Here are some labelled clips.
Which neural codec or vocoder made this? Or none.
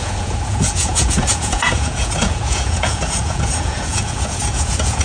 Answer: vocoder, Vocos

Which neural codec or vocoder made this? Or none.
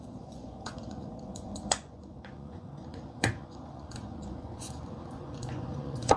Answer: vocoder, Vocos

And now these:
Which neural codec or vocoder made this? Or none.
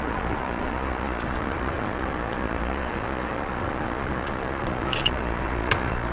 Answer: vocoder, Vocos